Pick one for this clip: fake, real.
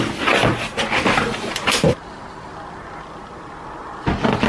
real